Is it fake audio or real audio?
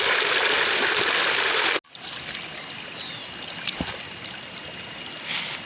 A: real